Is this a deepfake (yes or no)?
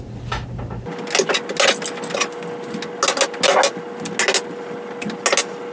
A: no